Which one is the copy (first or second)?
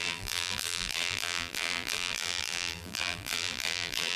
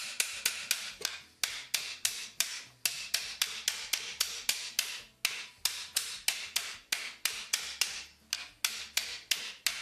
first